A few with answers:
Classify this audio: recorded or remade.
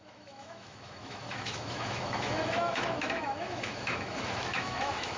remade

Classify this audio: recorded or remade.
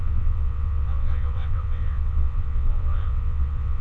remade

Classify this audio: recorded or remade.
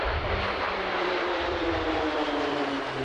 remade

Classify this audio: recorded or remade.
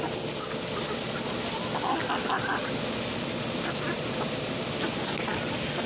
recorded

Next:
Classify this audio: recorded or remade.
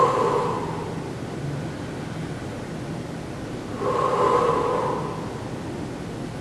recorded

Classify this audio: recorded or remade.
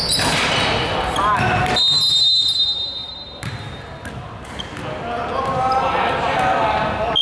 recorded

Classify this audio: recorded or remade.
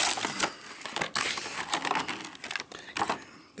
recorded